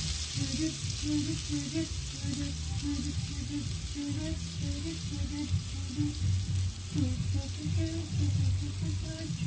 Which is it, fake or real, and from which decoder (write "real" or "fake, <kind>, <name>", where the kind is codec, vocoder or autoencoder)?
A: real